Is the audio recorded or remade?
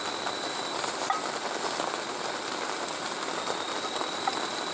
recorded